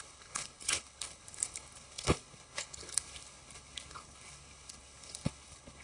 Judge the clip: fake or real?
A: fake